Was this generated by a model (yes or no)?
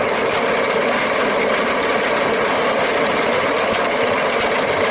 no